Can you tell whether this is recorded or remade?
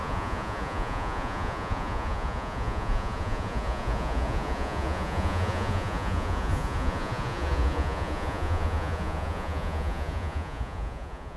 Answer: remade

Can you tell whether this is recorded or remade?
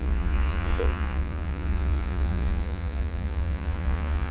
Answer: remade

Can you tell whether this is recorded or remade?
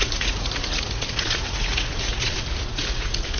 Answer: remade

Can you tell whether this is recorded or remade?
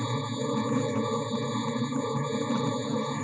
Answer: remade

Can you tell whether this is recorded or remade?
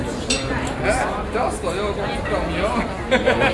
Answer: recorded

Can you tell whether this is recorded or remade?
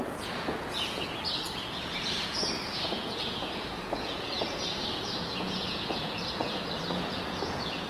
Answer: remade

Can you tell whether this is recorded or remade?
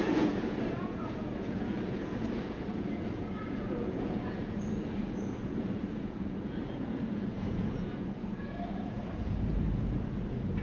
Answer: remade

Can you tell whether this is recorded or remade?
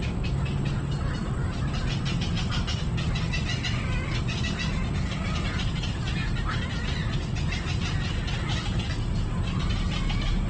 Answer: recorded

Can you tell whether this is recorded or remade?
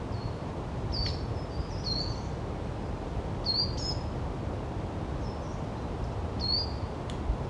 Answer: recorded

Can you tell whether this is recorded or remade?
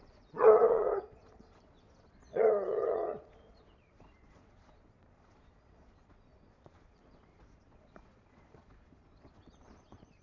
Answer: remade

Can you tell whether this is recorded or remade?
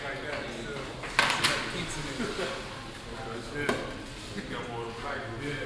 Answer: recorded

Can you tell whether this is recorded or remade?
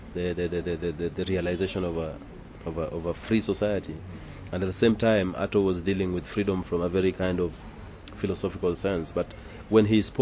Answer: recorded